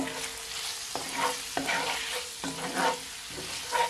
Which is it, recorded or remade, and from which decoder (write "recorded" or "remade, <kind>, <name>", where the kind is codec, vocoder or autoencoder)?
recorded